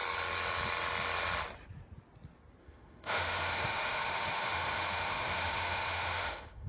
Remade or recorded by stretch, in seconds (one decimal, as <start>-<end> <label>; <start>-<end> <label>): 0.0-2.6 recorded; 2.6-6.7 remade